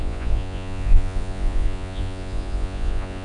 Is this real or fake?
fake